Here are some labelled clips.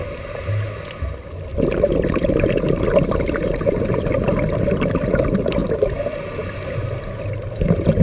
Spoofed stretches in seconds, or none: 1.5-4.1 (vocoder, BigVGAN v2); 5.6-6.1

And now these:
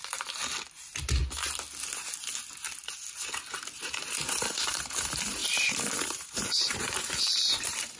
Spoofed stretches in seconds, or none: 0.0-0.4 (vocoder, BigVGAN v2); 3.8-8.0

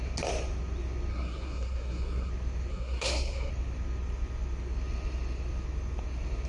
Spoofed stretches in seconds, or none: 1.1-2.3 (codec, SNAC); 2.7-3.5

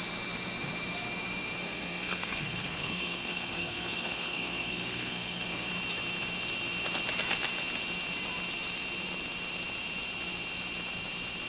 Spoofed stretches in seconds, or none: 1.6-5.7 (codec, SNAC)

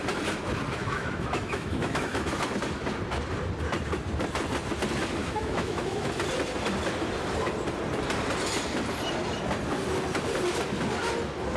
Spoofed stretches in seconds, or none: 0.8-2.4 (autoencoder, DAC-VAE); 5.2-6.1

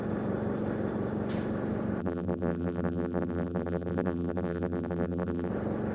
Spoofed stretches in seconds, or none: 2.0-5.5 (vocoder, BigVGAN v2)